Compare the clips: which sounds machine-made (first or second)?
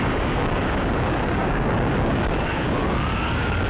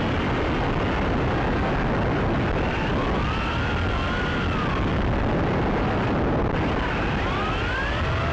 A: first